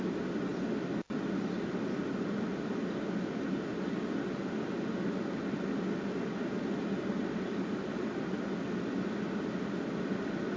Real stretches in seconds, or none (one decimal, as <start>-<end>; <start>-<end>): 0.0-10.6